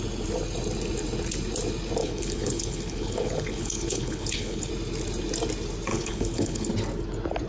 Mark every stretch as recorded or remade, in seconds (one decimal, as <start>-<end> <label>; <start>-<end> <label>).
0.0-2.0 recorded; 2.0-4.7 remade; 4.7-5.9 recorded; 5.9-6.7 remade; 6.7-7.5 recorded